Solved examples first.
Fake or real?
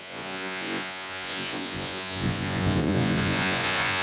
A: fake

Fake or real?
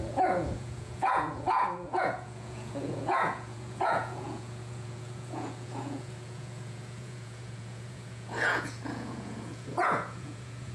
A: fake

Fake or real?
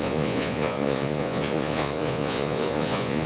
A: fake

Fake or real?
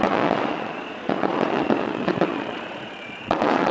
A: fake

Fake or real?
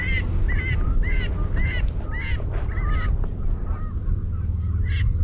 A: real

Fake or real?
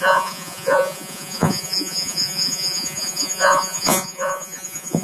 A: fake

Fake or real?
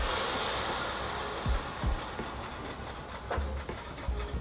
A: real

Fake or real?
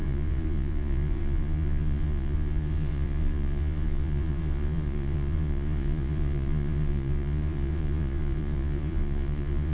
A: fake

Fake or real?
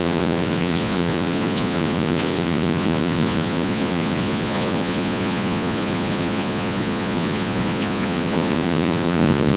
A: fake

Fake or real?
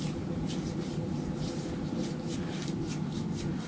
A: real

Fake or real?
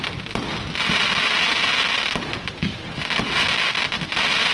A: real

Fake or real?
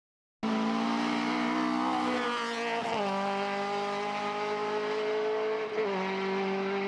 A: real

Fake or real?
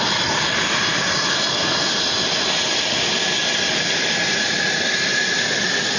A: real